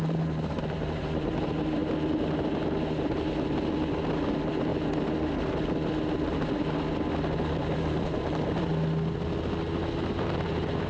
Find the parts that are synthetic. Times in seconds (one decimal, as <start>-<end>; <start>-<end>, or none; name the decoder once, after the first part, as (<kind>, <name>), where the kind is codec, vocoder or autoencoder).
0.0-1.8 (vocoder, BigVGAN v2); 4.3-4.7; 7.5-8.7; 10.1-10.9